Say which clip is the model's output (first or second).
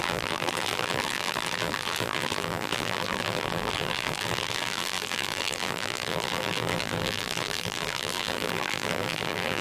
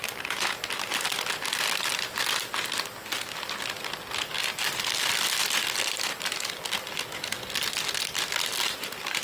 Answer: first